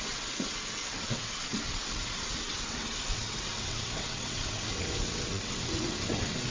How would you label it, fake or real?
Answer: fake